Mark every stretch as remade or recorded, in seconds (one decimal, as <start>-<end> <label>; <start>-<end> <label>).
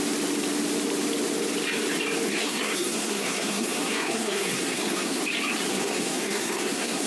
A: 0.0-2.3 recorded; 2.3-5.2 remade; 5.2-5.7 recorded; 5.7-7.1 remade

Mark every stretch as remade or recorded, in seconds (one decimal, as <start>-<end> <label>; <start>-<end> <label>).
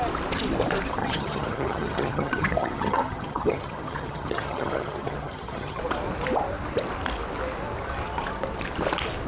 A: 0.0-1.0 recorded; 1.0-5.8 remade; 5.8-9.3 recorded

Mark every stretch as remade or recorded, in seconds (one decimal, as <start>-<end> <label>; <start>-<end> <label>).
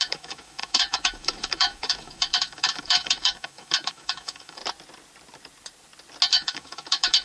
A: 0.0-4.6 remade; 4.6-6.3 recorded; 6.3-7.2 remade